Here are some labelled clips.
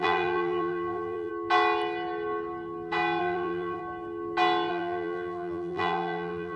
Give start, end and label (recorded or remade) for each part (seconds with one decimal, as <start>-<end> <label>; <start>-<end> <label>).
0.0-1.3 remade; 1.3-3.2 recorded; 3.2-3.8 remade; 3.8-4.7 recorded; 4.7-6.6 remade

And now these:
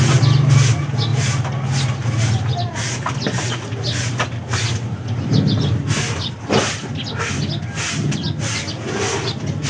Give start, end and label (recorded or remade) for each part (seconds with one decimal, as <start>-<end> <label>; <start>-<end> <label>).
0.0-9.7 recorded

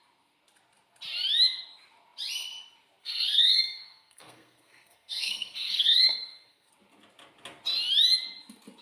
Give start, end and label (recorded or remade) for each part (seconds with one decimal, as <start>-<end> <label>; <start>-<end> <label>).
0.0-3.0 recorded; 3.0-6.7 remade; 6.7-8.8 recorded

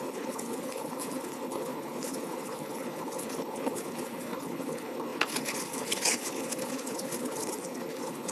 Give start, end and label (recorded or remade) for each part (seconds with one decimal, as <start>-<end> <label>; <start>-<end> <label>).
0.0-8.3 remade

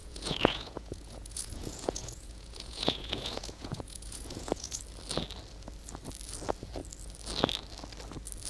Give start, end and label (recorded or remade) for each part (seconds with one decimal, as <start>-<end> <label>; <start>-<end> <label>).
0.0-4.8 remade; 4.8-8.5 recorded